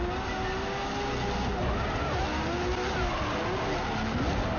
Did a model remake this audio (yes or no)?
no